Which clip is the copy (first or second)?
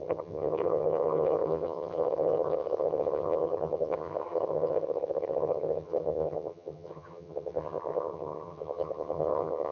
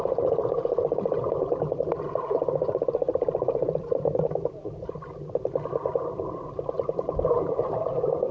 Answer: first